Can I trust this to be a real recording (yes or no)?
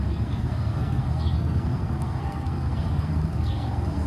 no